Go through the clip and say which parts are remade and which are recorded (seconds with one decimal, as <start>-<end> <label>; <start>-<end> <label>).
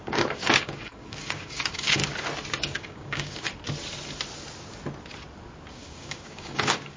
0.0-2.0 remade; 2.0-2.6 recorded; 2.6-3.5 remade; 3.5-5.7 recorded; 5.7-7.0 remade